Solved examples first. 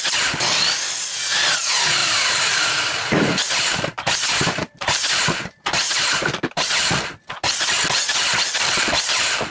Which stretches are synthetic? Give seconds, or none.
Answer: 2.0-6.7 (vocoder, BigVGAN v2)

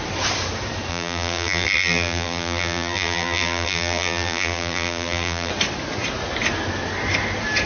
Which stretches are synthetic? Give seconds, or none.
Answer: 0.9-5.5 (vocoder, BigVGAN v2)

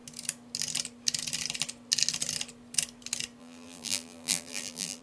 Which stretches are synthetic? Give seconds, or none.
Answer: 3.4-5.0 (vocoder, BigVGAN v2)